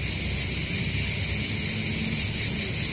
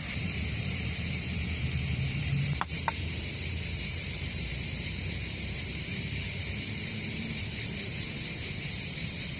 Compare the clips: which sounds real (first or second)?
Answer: first